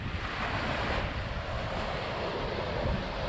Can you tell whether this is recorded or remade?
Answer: recorded